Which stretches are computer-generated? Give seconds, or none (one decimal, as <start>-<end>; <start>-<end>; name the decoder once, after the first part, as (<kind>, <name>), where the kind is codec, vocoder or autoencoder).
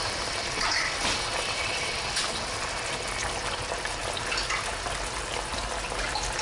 none